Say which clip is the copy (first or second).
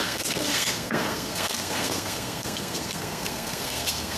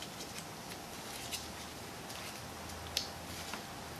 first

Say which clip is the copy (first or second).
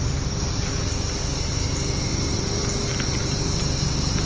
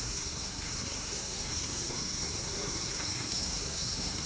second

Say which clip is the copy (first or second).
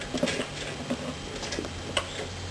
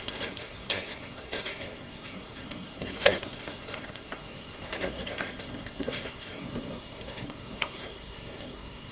second